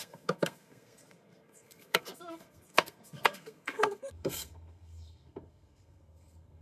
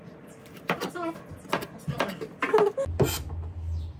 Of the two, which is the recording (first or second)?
second